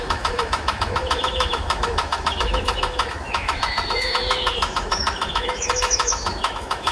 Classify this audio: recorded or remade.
remade